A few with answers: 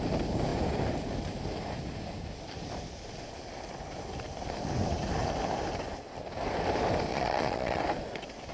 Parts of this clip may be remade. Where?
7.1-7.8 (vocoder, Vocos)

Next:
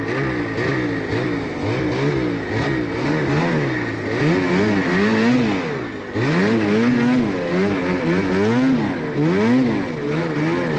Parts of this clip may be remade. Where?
none

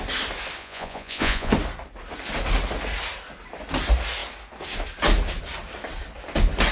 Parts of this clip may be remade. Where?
0.6-1.5 (vocoder, Vocos)

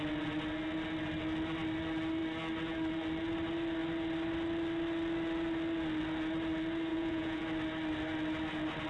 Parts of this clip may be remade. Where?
6.9-7.4 (vocoder, Vocos)

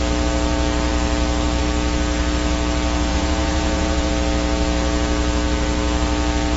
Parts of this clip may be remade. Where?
3.1-4.1 (vocoder, Vocos)

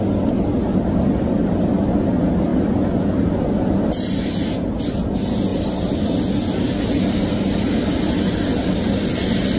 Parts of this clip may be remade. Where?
none

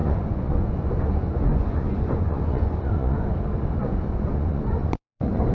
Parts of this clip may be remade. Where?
0.0-3.3 (vocoder, Vocos); 3.8-5.5